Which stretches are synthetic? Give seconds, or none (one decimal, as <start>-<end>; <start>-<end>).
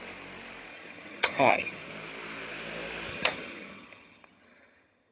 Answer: 0.7-1.9; 3.1-5.1